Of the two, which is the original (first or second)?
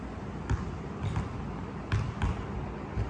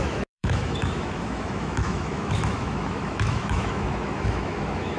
first